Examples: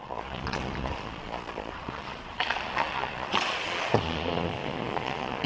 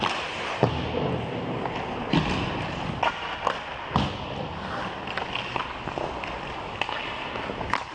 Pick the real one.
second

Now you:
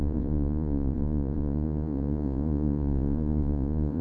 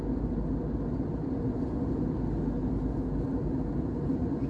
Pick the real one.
second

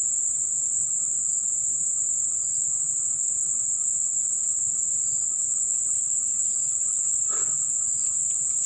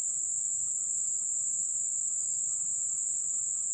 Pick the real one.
second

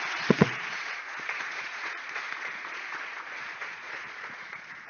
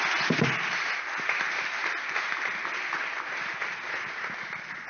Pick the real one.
second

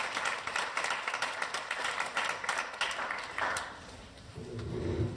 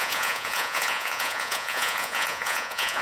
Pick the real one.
first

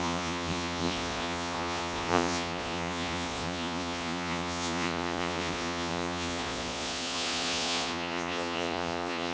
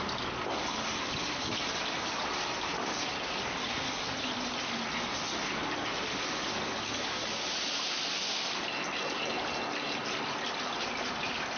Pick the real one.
second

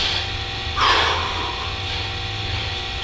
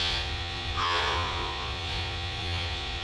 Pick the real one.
first